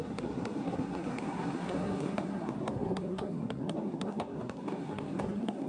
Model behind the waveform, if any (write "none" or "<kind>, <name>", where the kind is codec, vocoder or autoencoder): codec, SNAC